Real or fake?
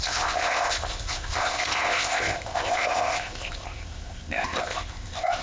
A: fake